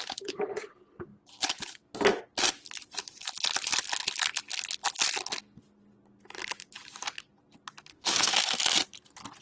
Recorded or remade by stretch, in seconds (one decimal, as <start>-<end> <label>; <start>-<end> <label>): 0.0-7.9 recorded; 7.9-8.6 remade; 8.6-9.4 recorded